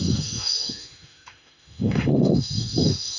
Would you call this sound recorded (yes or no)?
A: no